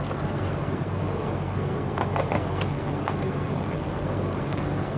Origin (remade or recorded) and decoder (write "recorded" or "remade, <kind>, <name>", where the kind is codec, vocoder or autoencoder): remade, codec, SNAC